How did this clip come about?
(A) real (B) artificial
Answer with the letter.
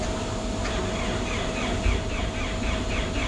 A